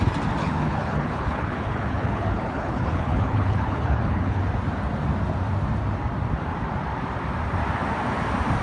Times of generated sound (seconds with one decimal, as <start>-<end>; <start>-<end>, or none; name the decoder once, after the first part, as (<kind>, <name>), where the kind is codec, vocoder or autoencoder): 0.4-4.4 (codec, HILCodec)